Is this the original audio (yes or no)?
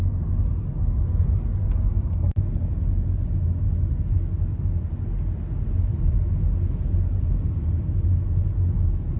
yes